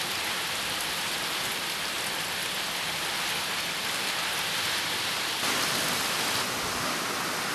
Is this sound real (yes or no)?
yes